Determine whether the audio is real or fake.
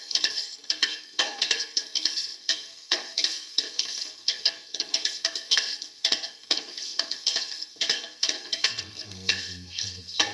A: fake